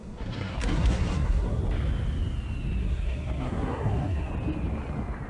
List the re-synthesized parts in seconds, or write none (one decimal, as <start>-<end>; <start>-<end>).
0.0-1.6; 2.8-4.3